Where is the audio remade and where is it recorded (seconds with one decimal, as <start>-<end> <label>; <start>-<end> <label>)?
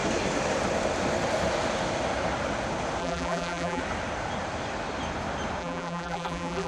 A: 0.0-3.0 recorded; 3.0-3.8 remade; 3.8-5.6 recorded; 5.6-6.7 remade